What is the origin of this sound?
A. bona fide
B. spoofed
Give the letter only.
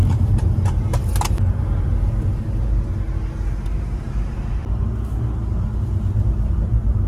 A